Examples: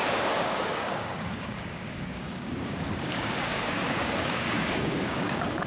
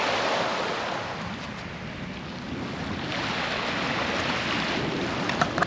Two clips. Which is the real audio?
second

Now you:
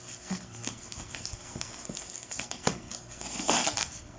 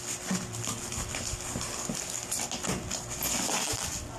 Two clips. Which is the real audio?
second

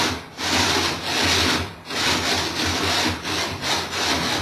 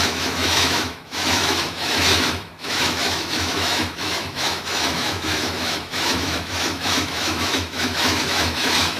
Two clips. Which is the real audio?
first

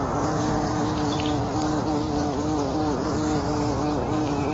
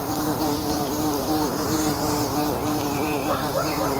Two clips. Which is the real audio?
first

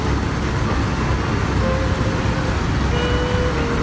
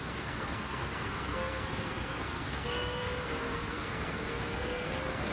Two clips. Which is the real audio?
first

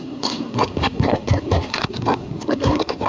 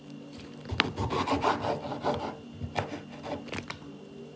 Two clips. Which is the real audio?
second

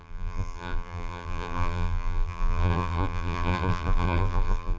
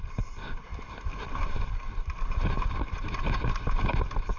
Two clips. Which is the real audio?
second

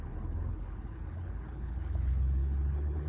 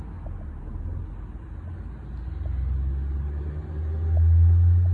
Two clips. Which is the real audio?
second